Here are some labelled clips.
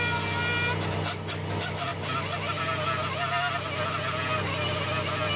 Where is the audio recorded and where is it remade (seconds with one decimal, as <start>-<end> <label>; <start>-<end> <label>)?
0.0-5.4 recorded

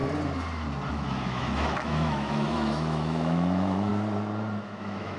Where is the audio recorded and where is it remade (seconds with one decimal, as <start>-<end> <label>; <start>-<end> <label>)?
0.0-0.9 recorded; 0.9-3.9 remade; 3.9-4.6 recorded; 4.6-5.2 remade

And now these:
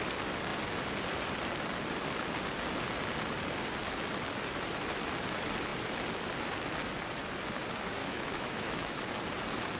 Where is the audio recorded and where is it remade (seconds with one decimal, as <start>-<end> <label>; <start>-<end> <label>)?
0.0-8.0 recorded; 8.0-9.0 remade; 9.0-9.8 recorded

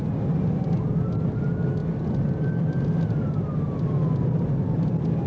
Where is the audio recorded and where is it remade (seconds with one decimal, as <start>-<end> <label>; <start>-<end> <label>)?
0.0-5.3 recorded